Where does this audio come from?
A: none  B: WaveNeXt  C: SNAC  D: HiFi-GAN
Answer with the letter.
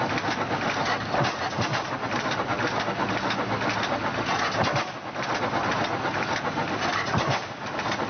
A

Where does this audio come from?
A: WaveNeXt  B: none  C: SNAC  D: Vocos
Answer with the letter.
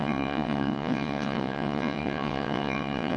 A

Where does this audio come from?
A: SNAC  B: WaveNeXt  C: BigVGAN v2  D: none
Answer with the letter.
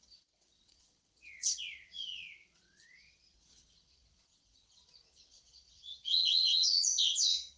B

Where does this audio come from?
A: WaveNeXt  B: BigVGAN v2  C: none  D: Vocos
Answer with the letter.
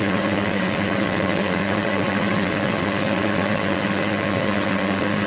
A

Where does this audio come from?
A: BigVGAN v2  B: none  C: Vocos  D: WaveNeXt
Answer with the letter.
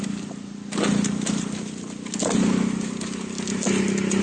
B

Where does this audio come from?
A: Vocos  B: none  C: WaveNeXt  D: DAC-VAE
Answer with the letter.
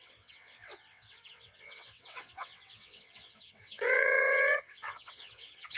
C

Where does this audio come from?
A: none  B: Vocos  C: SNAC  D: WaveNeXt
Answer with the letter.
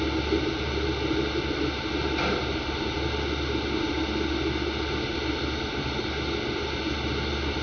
A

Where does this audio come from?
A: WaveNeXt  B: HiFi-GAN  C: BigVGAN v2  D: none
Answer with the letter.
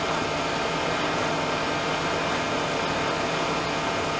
D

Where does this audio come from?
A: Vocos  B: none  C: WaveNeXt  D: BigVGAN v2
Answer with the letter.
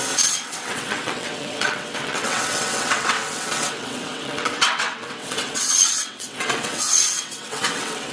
C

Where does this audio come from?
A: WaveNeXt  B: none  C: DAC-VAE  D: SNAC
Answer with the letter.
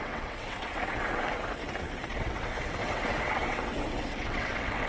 A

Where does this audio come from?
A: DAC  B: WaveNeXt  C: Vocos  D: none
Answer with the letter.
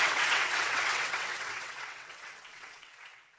B